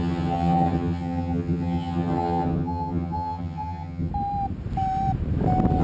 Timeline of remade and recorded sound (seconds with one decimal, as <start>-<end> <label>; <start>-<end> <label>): 0.0-4.1 remade; 4.1-5.8 recorded

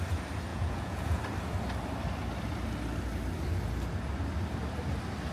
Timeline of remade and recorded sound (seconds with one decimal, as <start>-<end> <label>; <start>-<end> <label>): 0.0-0.5 recorded; 0.5-1.2 remade; 1.2-5.3 recorded